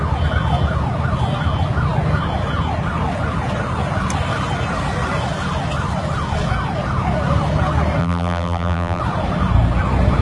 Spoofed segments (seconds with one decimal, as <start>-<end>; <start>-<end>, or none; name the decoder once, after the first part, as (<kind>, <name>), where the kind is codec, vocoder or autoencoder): 8.0-9.0 (vocoder, BigVGAN v2)